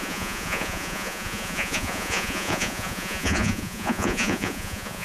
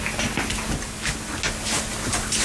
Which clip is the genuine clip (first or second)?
second